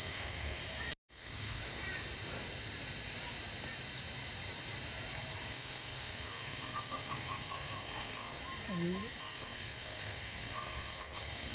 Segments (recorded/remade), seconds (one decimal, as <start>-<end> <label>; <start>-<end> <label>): 0.0-0.6 remade; 0.6-1.1 recorded; 1.1-1.6 remade; 1.6-5.5 recorded; 5.5-8.4 remade; 8.4-9.2 recorded; 9.2-11.5 remade